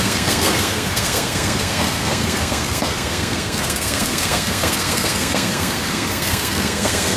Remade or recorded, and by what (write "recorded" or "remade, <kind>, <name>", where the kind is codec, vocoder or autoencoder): remade, codec, SNAC